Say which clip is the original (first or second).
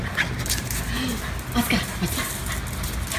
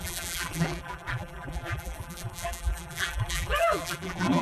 first